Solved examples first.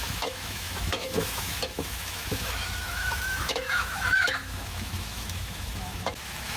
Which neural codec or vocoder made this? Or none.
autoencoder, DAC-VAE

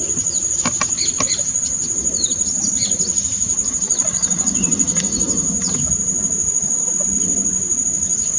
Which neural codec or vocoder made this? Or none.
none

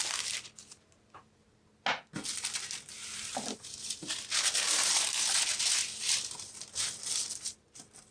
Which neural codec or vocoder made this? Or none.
none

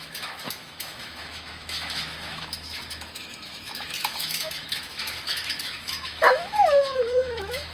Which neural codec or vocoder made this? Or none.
autoencoder, DAC-VAE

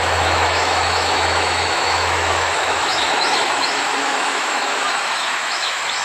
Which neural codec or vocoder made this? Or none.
autoencoder, DAC-VAE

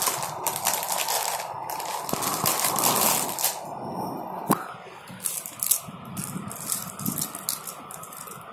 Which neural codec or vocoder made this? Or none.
none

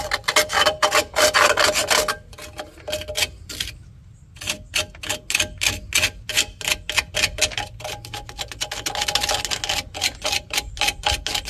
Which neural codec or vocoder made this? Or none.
none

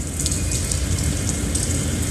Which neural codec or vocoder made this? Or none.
none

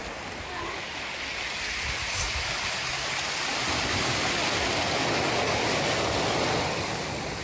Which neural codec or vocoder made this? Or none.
none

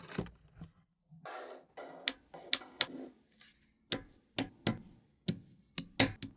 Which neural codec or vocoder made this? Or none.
none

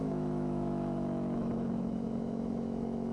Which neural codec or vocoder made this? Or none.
autoencoder, DAC-VAE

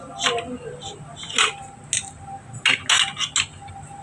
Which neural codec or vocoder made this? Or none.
none